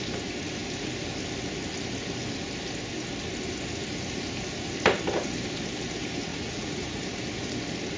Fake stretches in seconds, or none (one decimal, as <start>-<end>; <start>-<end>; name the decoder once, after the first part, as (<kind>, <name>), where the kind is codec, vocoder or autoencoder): 6.3-7.0 (vocoder, Vocos)